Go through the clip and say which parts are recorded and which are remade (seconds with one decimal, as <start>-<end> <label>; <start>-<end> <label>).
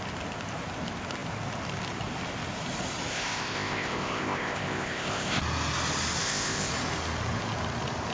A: 0.0-3.1 recorded; 3.1-5.4 remade; 5.4-6.2 recorded; 6.2-6.7 remade; 6.7-8.1 recorded